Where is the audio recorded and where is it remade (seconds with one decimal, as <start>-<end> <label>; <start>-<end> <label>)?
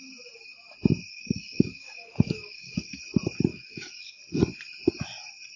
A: 0.0-1.1 recorded; 1.1-3.0 remade; 3.0-3.5 recorded; 3.5-4.2 remade; 4.2-5.6 recorded